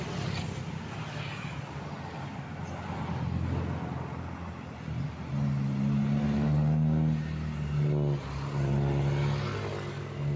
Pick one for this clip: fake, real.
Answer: real